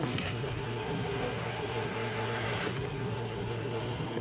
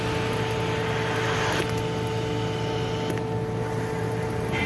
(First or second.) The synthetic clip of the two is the first